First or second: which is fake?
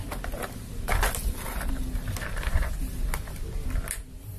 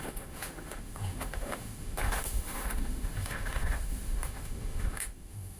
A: second